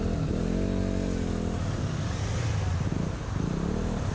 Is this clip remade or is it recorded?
recorded